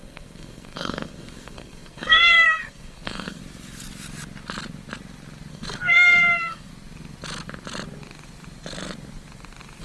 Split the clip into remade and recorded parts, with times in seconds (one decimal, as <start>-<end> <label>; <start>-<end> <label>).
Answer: 0.0-3.4 remade; 3.4-5.5 recorded; 5.5-6.7 remade; 6.7-9.8 recorded